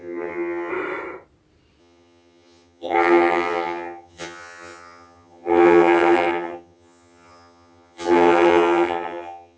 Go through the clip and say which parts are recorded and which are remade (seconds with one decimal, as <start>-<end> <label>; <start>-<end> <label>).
0.0-0.7 remade; 0.7-1.8 recorded; 1.8-9.6 remade